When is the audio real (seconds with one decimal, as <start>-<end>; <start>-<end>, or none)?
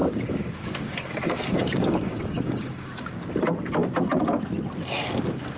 3.4-5.6